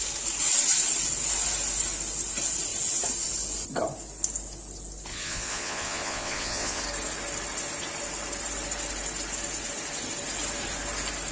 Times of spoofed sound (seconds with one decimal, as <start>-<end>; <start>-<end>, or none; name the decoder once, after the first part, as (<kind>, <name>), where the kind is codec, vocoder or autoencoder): 5.1-6.8 (vocoder, Vocos)